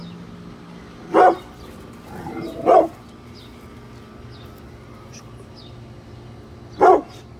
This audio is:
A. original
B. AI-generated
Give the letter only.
A